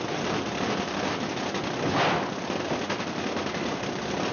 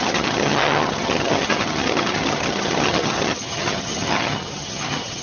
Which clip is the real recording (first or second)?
first